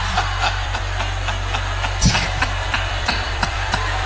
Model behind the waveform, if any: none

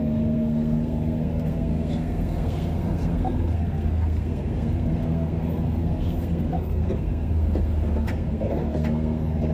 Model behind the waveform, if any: codec, SNAC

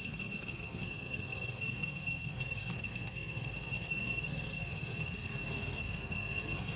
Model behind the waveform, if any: codec, SNAC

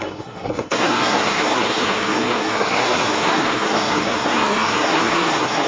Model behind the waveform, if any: codec, SNAC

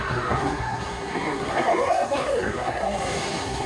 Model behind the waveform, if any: codec, SNAC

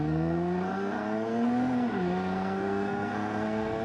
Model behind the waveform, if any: codec, SNAC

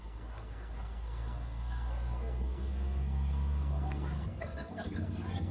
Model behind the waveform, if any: codec, SNAC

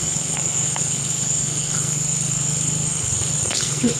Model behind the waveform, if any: codec, SNAC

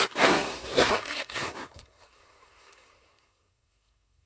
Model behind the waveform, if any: codec, SNAC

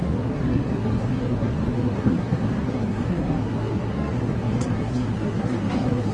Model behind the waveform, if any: codec, SNAC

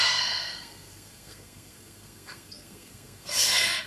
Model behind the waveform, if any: codec, SNAC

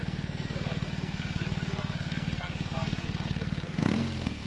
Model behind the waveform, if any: codec, SNAC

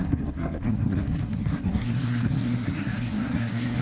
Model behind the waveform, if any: codec, SNAC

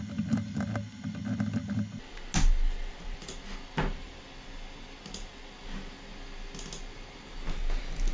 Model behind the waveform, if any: none